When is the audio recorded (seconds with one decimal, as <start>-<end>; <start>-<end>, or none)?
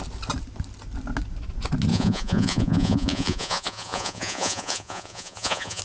0.0-1.9